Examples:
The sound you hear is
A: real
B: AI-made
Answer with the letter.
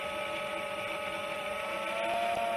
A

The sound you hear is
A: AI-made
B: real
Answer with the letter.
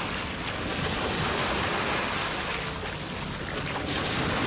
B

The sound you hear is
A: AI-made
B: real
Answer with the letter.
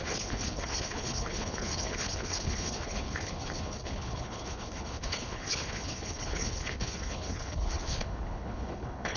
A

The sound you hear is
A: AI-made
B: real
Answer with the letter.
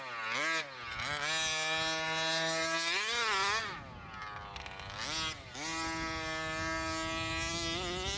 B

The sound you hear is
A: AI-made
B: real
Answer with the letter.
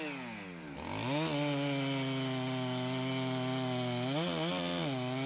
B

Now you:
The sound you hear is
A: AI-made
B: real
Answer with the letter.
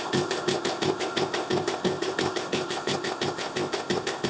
A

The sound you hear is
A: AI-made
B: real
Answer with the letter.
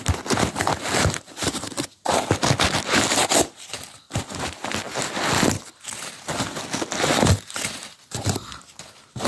B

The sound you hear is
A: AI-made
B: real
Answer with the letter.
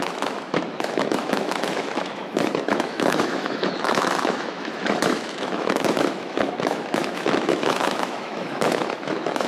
A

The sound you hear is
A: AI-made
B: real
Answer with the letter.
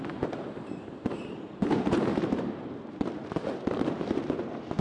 A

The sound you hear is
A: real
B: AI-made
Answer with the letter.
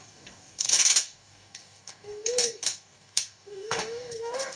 B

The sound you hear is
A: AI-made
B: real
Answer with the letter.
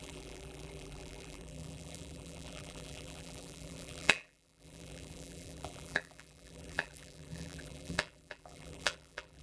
A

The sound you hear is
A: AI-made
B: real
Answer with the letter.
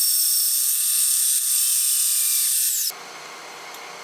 B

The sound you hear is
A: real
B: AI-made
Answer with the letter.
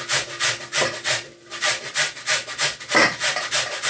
A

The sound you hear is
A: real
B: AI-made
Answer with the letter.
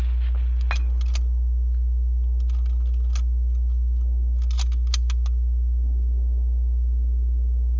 A